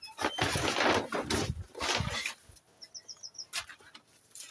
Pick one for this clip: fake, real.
real